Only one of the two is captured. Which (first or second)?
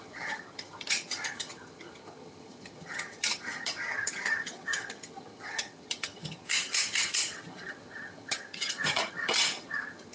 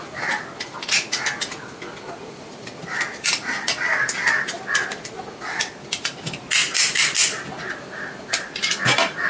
second